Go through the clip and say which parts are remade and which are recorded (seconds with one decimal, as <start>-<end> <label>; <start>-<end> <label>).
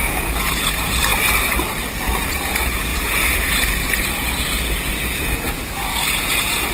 0.0-1.1 remade; 1.1-2.3 recorded; 2.3-6.7 remade